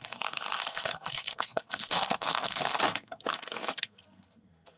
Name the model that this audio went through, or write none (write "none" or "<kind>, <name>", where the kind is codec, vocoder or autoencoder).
codec, SNAC